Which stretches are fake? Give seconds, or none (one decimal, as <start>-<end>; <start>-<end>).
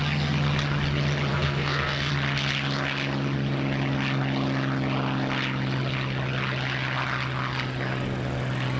1.3-2.1